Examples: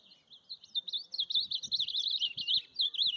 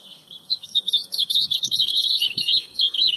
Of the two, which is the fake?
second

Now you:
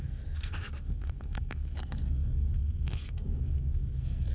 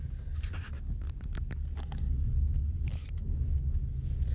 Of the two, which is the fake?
first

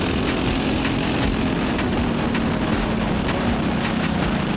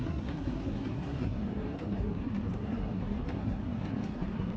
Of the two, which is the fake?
second